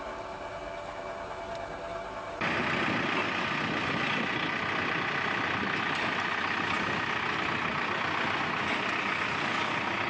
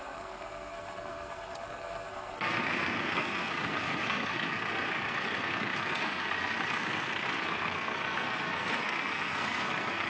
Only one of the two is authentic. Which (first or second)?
first